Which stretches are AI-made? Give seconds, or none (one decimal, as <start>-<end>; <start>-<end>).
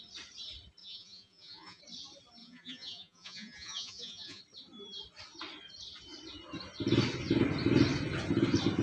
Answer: 0.8-1.8; 2.4-4.4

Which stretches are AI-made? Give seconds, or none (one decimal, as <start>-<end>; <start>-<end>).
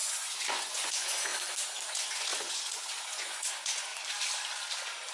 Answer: 0.0-1.3; 1.9-3.9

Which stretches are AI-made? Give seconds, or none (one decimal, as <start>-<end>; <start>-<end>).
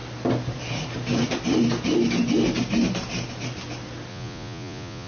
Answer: 4.1-5.1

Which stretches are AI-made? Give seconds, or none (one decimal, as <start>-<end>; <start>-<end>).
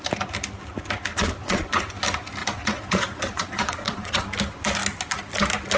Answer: 1.1-1.8; 2.4-4.2